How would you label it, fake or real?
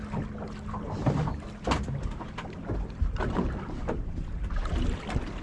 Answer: real